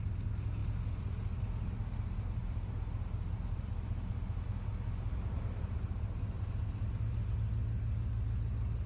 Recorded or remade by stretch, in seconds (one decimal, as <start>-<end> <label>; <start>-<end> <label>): 0.0-8.9 recorded